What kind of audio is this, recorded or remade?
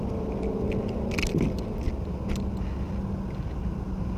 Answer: recorded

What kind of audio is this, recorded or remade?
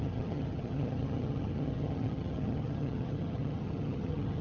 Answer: remade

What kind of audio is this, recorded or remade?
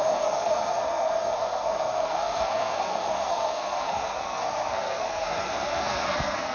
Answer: remade